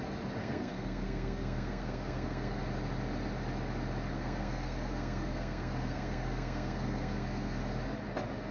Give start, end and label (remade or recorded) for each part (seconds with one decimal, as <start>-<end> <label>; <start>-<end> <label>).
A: 0.0-0.4 recorded; 0.4-2.6 remade; 2.6-4.1 recorded; 4.1-7.6 remade; 7.6-8.5 recorded